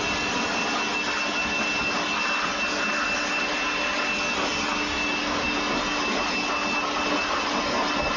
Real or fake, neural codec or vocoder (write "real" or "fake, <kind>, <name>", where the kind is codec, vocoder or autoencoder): real